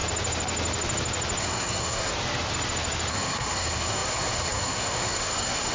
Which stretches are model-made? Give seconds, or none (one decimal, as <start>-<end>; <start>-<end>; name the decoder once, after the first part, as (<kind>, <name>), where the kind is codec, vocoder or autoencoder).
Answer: 1.4-2.1 (codec, SNAC); 3.1-5.7